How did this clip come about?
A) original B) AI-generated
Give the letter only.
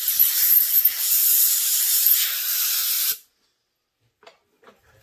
B